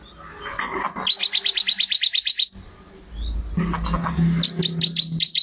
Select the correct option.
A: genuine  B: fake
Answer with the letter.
A